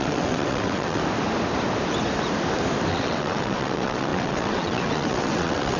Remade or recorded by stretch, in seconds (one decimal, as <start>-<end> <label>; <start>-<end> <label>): 0.0-1.0 remade; 1.0-2.9 recorded; 2.9-5.8 remade